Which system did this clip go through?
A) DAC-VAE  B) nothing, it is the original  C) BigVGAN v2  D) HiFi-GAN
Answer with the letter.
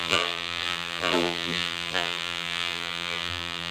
C